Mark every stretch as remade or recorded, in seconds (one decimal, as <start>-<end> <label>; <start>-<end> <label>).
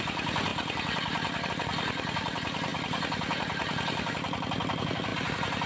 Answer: 0.0-5.7 recorded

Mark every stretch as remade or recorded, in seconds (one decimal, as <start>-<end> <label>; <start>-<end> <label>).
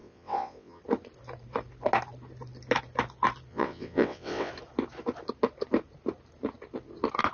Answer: 0.0-0.8 remade; 0.8-3.5 recorded; 3.5-4.5 remade; 4.5-7.3 recorded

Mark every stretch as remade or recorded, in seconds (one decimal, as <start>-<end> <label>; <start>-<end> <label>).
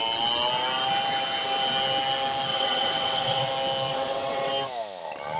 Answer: 0.0-2.5 recorded; 2.5-3.5 remade; 3.5-3.9 recorded; 3.9-4.5 remade; 4.5-5.4 recorded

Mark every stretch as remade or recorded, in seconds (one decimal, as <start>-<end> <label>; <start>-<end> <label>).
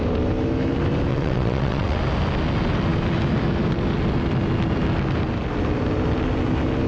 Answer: 0.0-1.1 recorded; 1.1-2.0 remade; 2.0-6.9 recorded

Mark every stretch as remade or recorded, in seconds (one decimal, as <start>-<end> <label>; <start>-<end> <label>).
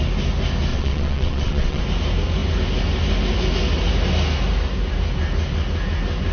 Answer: 0.0-0.7 recorded; 0.7-1.8 remade; 1.8-6.3 recorded